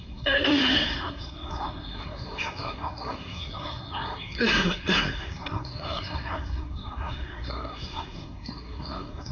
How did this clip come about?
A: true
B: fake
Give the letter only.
B